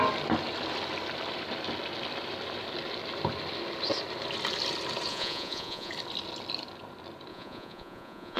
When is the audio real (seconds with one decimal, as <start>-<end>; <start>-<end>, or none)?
0.0-5.1; 5.9-7.3